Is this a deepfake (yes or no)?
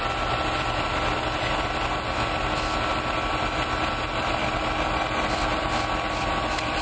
no